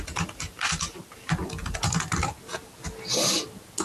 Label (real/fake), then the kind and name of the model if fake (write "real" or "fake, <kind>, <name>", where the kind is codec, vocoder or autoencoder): real